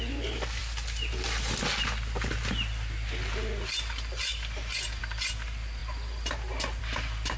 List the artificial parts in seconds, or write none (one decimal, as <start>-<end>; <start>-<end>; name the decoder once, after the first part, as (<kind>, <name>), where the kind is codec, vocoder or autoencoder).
none